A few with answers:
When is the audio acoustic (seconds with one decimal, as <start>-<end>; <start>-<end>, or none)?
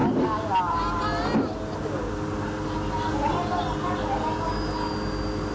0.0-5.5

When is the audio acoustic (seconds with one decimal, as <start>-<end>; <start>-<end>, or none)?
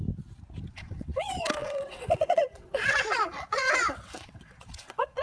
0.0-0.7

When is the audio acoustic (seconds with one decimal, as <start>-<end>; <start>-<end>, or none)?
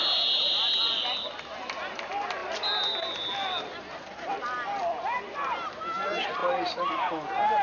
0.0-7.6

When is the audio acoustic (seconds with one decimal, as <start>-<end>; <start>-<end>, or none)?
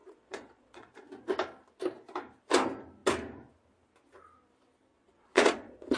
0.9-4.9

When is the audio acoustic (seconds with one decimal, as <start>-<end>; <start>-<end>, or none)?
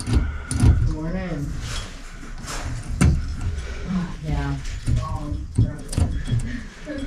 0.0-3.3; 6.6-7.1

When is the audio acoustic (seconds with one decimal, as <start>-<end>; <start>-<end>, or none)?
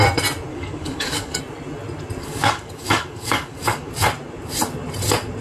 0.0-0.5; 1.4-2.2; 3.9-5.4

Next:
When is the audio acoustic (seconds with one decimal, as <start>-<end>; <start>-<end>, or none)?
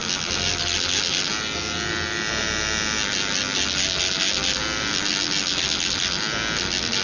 0.0-7.0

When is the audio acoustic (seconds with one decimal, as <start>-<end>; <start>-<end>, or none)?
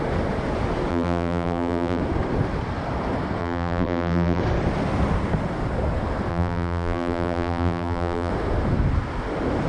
0.0-0.9; 2.0-3.4; 4.4-6.3; 8.3-9.7